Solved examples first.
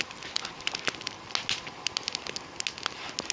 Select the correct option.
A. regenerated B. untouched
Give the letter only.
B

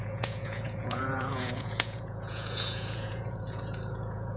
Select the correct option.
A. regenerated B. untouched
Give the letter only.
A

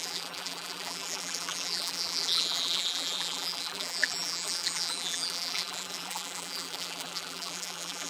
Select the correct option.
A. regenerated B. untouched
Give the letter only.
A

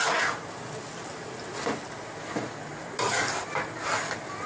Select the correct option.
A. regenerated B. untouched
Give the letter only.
B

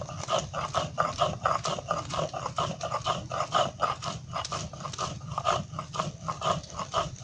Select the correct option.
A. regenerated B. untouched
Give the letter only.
A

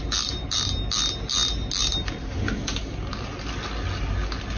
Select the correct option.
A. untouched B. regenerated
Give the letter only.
A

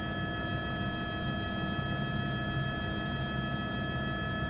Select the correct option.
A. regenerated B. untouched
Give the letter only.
B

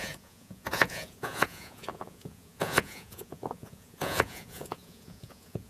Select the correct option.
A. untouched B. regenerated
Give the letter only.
B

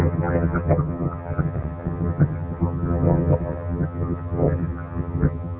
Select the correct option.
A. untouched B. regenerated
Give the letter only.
B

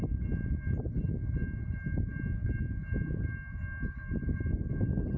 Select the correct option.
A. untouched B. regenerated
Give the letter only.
A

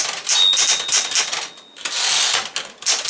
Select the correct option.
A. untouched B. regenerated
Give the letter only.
A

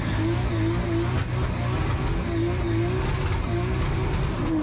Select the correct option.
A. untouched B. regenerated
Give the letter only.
A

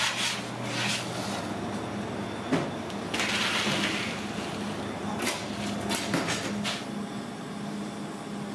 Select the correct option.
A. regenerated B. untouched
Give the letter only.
B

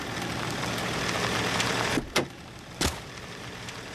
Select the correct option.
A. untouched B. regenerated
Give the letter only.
A